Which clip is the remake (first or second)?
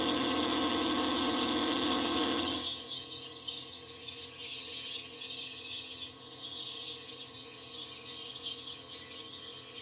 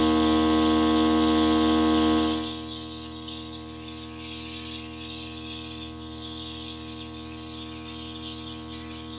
first